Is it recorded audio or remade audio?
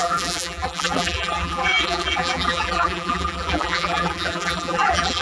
remade